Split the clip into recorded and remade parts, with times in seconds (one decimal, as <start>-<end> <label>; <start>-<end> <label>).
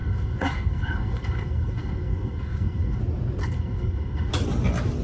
0.0-3.0 remade; 3.0-3.4 recorded; 3.4-4.3 remade; 4.3-5.0 recorded